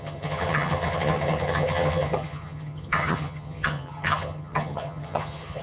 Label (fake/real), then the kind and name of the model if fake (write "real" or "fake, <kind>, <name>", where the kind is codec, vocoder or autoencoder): fake, vocoder, HiFi-GAN